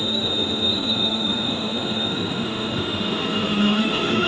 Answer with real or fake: fake